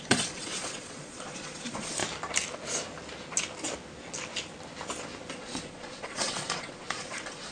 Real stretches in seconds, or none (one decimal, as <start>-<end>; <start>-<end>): 2.0-5.3